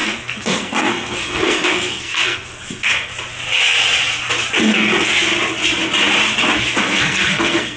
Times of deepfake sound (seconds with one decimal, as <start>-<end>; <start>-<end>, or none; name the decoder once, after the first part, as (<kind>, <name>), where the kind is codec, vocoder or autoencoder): 0.0-3.1 (codec, SNAC); 4.6-5.1; 6.8-7.8